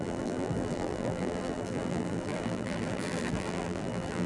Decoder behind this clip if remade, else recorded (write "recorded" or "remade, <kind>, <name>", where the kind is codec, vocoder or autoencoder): remade, vocoder, BigVGAN v2